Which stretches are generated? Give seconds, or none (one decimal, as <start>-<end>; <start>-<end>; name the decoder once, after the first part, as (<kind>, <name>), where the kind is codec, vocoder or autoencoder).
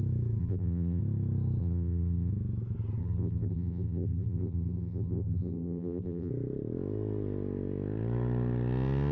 0.4-1.0 (vocoder, BigVGAN v2); 1.6-2.3; 3.0-6.3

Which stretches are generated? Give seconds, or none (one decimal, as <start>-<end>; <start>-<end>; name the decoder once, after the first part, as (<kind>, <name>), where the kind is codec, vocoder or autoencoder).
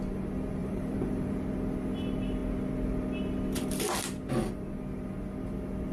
0.6-1.3 (vocoder, BigVGAN v2)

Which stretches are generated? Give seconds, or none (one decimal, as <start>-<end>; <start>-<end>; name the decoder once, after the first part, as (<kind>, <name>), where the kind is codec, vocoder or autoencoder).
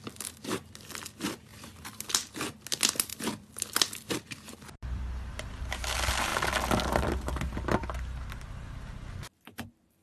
1.5-2.1 (vocoder, BigVGAN v2); 3.1-4.1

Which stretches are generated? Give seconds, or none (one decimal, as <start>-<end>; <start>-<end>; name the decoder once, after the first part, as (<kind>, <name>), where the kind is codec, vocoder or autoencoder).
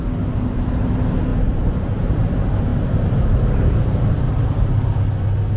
1.3-2.2 (vocoder, BigVGAN v2); 2.7-4.3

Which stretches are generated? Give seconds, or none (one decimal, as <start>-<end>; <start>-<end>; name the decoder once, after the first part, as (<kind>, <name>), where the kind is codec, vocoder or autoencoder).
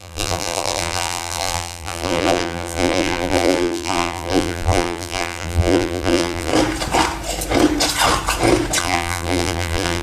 0.0-6.5 (vocoder, BigVGAN v2); 8.8-10.0